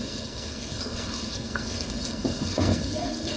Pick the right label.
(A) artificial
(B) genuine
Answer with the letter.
A